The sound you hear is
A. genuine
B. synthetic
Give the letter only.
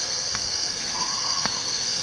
B